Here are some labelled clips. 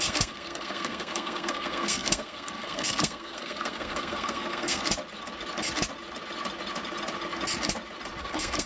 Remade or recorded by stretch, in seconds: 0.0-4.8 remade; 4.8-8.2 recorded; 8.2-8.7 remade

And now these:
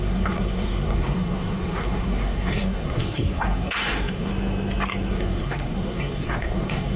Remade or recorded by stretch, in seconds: 0.0-4.3 remade; 4.3-5.1 recorded; 5.1-7.0 remade

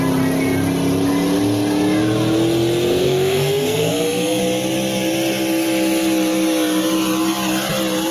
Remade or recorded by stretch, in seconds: 0.0-2.9 recorded; 2.9-4.4 remade; 4.4-8.1 recorded

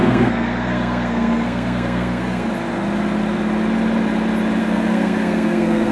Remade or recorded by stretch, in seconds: 0.0-2.5 remade; 2.5-4.6 recorded; 4.6-5.9 remade

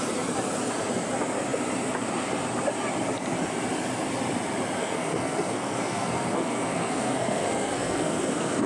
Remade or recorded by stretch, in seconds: 0.0-4.8 recorded; 4.8-8.7 remade

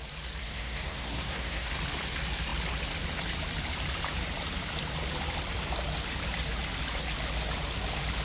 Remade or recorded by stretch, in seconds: 0.0-0.4 recorded; 0.4-1.7 remade; 1.7-8.2 recorded